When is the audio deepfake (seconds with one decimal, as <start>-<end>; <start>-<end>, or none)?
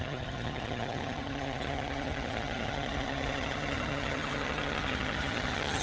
0.0-5.8